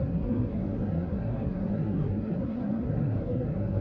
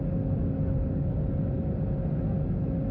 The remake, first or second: first